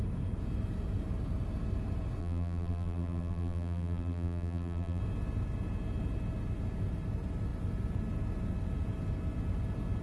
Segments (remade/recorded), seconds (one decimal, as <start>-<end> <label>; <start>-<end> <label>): 0.0-2.2 recorded; 2.2-5.0 remade; 5.0-10.0 recorded

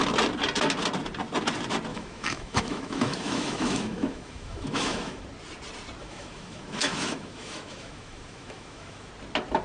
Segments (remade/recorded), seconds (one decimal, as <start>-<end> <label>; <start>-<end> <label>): 0.0-1.9 recorded; 1.9-5.2 remade; 5.2-6.0 recorded; 6.0-9.1 remade; 9.1-9.6 recorded

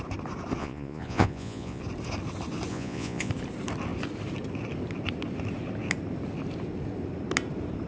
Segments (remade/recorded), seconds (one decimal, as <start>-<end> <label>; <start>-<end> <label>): 0.0-0.6 recorded; 0.6-1.8 remade; 1.8-2.7 recorded; 2.7-3.3 remade; 3.3-7.9 recorded